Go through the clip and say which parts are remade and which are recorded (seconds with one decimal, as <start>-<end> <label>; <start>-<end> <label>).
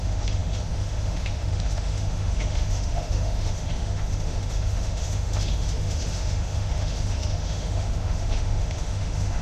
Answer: 0.0-9.4 remade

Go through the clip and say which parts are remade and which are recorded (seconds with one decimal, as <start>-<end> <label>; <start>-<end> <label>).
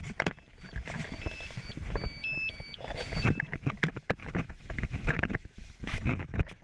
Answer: 0.0-4.2 recorded; 4.2-6.6 remade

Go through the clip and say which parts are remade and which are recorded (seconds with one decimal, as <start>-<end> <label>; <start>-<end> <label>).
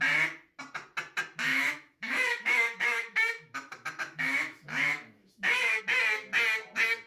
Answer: 0.0-1.5 recorded; 1.5-5.8 remade; 5.8-7.1 recorded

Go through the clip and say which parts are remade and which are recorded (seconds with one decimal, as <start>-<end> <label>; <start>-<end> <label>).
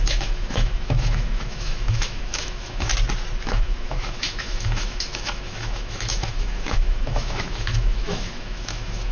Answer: 0.0-2.9 remade; 2.9-3.4 recorded; 3.4-9.1 remade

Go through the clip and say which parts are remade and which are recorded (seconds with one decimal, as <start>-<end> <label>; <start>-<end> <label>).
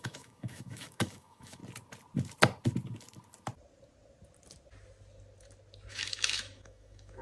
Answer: 0.0-1.6 remade; 1.6-5.9 recorded; 5.9-7.2 remade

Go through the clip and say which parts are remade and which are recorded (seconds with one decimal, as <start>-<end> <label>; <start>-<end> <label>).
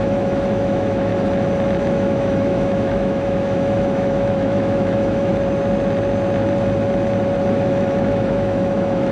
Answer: 0.0-1.1 remade; 1.1-1.8 recorded; 1.8-5.3 remade; 5.3-7.5 recorded; 7.5-9.1 remade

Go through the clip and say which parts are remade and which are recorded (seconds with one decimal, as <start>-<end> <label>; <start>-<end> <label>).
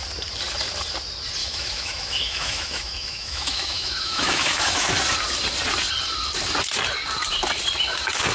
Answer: 0.0-1.4 recorded; 1.4-4.9 remade; 4.9-8.3 recorded